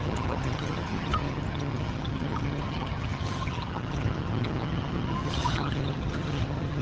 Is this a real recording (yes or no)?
no